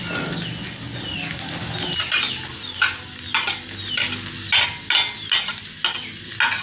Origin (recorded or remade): recorded